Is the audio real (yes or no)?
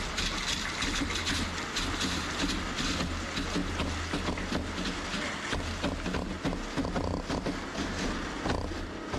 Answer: yes